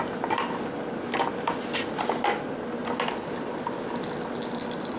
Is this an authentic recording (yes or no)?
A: yes